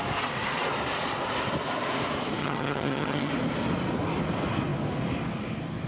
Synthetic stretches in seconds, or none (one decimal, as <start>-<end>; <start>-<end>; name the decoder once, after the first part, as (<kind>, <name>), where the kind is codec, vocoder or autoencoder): 2.4-3.3 (vocoder, HiFi-GAN)